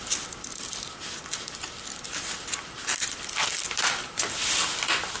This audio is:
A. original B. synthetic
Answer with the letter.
B